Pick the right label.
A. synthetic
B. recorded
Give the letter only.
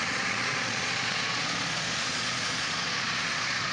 A